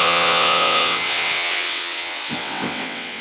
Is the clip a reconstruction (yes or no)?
yes